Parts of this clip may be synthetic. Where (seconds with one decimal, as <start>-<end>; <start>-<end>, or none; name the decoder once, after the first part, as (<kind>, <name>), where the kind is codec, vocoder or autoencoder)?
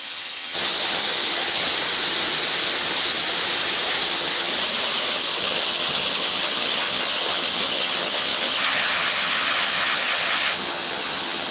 0.0-1.6 (vocoder, HiFi-GAN); 4.1-4.5; 5.1-11.5